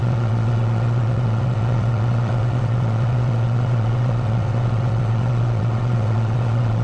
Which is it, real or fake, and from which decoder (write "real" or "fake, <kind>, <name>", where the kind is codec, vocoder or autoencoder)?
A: fake, vocoder, WaveNeXt